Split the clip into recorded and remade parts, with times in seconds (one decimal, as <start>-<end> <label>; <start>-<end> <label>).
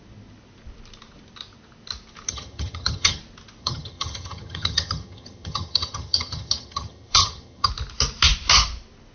0.0-2.3 recorded; 2.3-3.2 remade; 3.2-3.6 recorded; 3.6-7.7 remade; 7.7-9.1 recorded